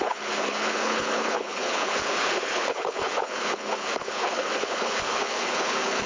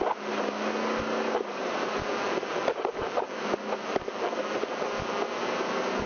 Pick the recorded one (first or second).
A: second